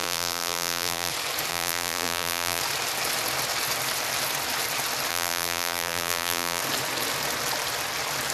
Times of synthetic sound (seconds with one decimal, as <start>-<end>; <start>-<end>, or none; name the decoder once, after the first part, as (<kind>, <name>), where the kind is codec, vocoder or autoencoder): 0.0-1.1 (vocoder, BigVGAN v2); 1.5-2.6; 5.1-6.6